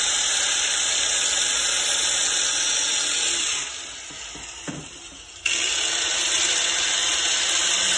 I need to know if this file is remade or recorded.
recorded